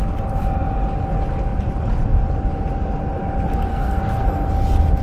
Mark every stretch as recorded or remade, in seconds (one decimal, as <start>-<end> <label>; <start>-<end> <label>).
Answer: 0.0-3.7 recorded; 3.7-4.5 remade; 4.5-5.0 recorded